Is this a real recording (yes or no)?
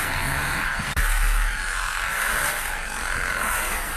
no